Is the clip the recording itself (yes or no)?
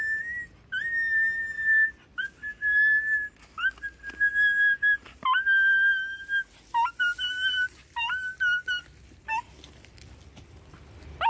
yes